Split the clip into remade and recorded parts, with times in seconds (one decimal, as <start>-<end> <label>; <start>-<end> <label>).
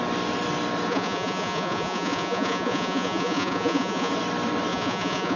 0.0-0.9 recorded; 0.9-4.1 remade; 4.1-4.7 recorded; 4.7-5.4 remade